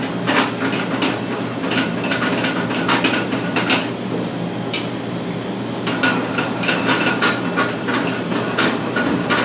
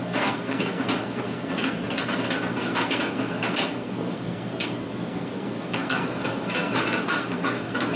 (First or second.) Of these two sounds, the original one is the first